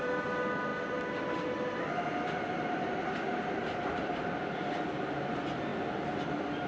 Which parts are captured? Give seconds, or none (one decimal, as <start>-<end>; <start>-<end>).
0.0-6.7